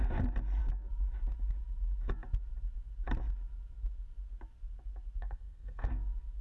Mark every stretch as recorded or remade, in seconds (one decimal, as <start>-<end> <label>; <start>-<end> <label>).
0.0-5.2 recorded; 5.2-5.9 remade; 5.9-6.4 recorded